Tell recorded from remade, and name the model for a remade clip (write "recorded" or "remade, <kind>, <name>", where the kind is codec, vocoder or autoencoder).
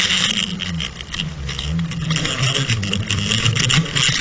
recorded